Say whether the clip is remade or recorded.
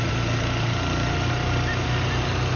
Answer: recorded